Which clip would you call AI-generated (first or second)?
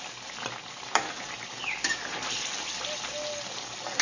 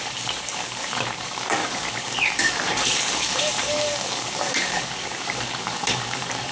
second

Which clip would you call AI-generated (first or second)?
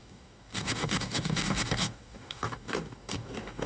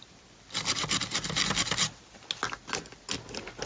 first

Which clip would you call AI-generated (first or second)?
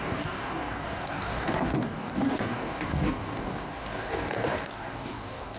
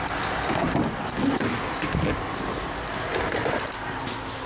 first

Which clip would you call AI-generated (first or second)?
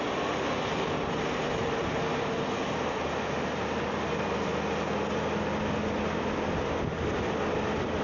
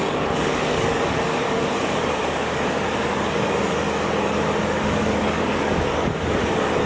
second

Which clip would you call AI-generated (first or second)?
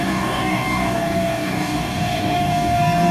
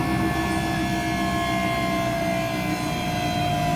first